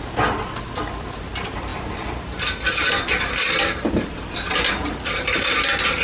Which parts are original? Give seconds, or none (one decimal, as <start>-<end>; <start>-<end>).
0.0-6.0